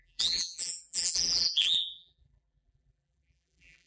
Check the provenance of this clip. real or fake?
fake